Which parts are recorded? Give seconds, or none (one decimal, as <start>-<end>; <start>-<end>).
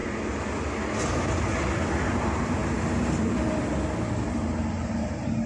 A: 0.0-2.1; 2.6-4.2